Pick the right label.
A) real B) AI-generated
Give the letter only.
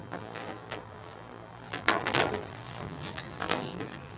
B